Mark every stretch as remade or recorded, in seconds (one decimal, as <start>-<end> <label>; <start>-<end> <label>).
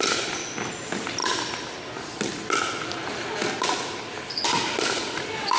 0.0-5.6 recorded